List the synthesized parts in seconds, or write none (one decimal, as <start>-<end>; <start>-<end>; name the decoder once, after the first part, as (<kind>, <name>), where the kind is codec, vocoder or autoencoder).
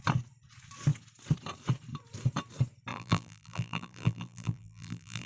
2.9-5.3 (vocoder, BigVGAN v2)